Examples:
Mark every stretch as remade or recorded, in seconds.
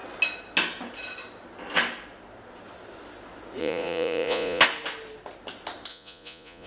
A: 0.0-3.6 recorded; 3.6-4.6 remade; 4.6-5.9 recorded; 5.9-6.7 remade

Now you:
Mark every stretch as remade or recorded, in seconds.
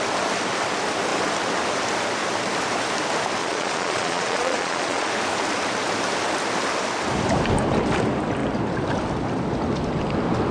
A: 0.0-3.4 recorded; 3.4-5.1 remade; 5.1-10.5 recorded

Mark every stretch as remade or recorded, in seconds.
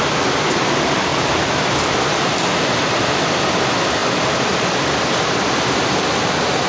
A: 0.0-6.7 recorded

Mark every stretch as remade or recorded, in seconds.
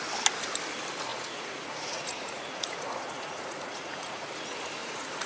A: 0.0-1.1 recorded; 1.1-4.3 remade; 4.3-4.8 recorded; 4.8-5.3 remade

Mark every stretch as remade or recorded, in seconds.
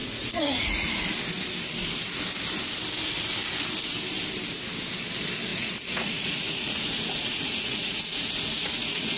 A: 0.0-1.1 remade; 1.1-5.5 recorded; 5.5-9.2 remade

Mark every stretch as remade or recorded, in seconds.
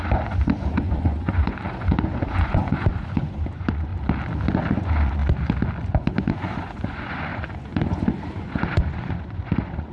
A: 0.0-3.9 remade; 3.9-4.7 recorded; 4.7-5.2 remade; 5.2-5.9 recorded; 5.9-9.9 remade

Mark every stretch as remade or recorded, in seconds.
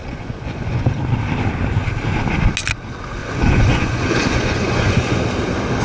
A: 0.0-0.9 remade; 0.9-3.2 recorded; 3.2-5.2 remade; 5.2-5.8 recorded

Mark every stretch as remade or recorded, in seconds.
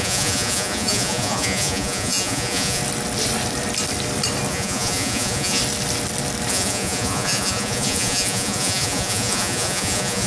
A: 0.0-2.8 remade; 2.8-4.5 recorded; 4.5-5.6 remade; 5.6-6.5 recorded; 6.5-10.3 remade